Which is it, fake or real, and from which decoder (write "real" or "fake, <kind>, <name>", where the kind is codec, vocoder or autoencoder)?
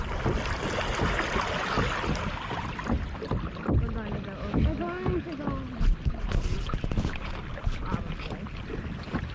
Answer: real